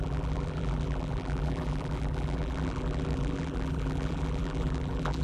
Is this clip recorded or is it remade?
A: remade